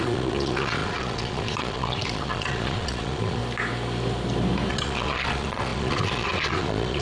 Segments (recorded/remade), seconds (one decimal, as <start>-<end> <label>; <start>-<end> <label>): 0.0-3.4 remade; 3.4-4.7 recorded; 4.7-7.0 remade